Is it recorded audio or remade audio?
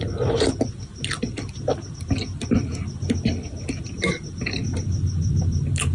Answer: recorded